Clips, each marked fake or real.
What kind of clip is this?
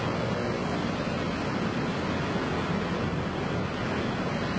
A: real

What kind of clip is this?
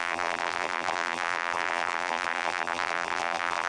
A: fake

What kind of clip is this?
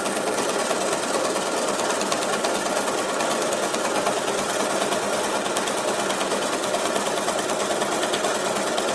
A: real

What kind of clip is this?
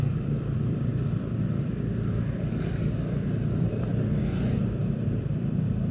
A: fake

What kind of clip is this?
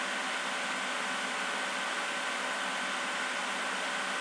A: real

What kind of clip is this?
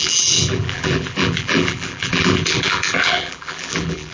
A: fake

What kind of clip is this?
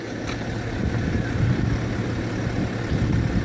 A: real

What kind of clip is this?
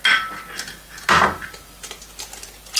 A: real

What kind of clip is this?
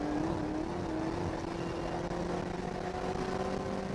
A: real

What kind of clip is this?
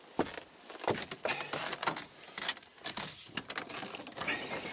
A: real